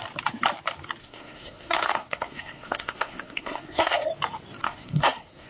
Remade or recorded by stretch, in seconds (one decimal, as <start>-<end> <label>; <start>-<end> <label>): 0.0-1.0 recorded; 1.0-4.1 remade; 4.1-4.6 recorded; 4.6-5.5 remade